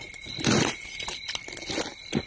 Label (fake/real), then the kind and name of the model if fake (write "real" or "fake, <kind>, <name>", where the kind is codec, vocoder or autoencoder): real